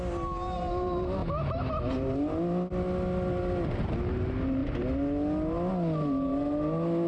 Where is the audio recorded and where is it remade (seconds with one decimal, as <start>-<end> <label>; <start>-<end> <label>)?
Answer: 0.0-7.1 recorded